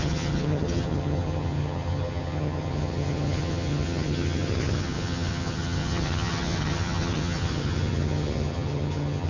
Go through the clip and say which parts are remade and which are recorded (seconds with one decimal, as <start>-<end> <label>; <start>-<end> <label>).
0.0-9.3 remade